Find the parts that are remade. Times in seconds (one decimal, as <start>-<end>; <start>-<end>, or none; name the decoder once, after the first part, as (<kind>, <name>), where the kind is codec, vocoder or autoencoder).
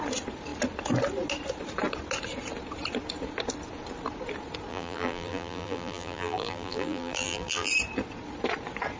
4.7-7.7 (vocoder, BigVGAN v2)